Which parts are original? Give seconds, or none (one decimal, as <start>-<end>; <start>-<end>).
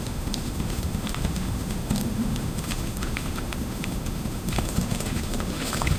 none